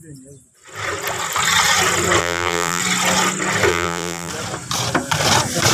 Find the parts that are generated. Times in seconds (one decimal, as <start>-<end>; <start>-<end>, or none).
2.2-2.8; 3.7-4.3